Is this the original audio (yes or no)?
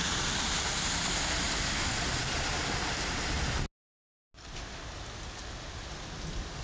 yes